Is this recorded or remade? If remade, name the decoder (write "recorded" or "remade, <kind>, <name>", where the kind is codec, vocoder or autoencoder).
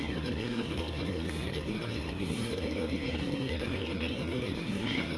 remade, codec, SNAC